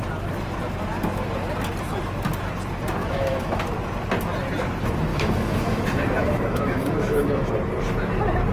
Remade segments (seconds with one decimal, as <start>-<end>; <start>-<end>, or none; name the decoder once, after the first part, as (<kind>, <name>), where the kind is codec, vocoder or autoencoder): 3.0-3.6 (autoencoder, DAC-VAE); 5.1-7.5